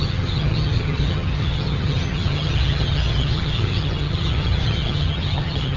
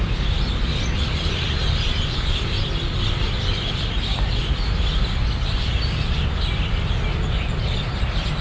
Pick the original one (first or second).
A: second